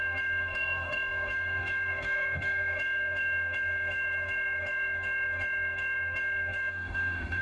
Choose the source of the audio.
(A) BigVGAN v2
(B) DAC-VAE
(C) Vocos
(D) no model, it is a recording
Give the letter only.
B